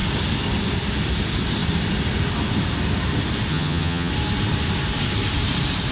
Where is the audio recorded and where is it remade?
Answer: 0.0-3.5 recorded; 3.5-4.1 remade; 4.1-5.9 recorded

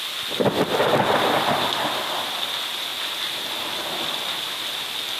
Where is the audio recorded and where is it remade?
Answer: 0.0-5.2 recorded